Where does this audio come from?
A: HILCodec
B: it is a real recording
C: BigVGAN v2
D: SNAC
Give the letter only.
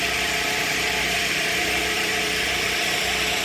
C